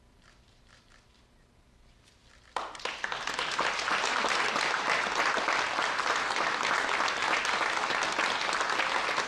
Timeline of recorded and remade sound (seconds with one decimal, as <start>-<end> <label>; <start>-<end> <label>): 0.0-9.3 recorded